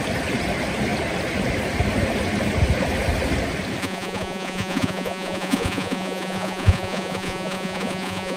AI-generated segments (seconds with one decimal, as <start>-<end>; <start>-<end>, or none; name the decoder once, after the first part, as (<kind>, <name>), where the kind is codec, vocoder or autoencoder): 3.8-8.4 (vocoder, Vocos)